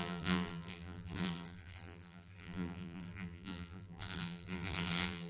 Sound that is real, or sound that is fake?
fake